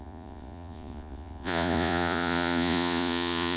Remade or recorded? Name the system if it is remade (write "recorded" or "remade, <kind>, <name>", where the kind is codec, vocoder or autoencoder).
remade, vocoder, Vocos